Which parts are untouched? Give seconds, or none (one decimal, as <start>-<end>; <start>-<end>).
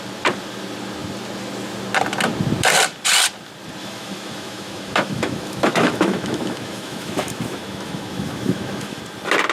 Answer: 0.0-3.8; 9.0-9.5